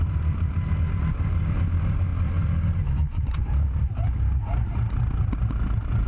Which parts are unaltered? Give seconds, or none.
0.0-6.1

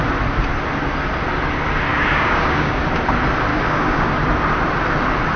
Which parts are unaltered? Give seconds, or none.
0.0-1.9; 2.8-3.5; 4.1-5.4

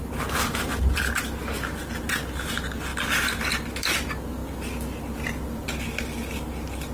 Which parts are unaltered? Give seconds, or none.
0.0-6.9

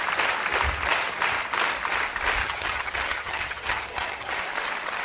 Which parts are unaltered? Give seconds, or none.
0.0-2.4; 4.4-5.0